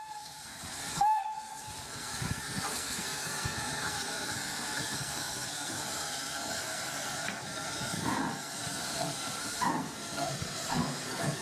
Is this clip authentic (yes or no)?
no